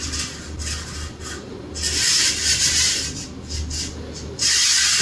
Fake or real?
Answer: real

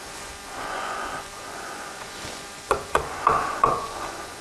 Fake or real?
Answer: fake